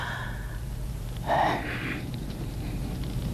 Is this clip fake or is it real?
fake